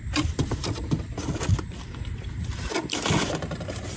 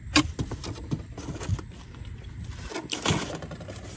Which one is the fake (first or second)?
first